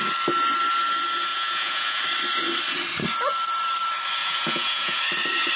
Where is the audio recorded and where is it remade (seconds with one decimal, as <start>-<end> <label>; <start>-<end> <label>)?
0.0-1.3 recorded; 1.3-2.0 remade; 2.0-4.2 recorded; 4.2-5.0 remade; 5.0-5.6 recorded